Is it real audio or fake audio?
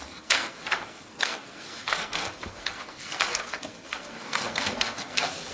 fake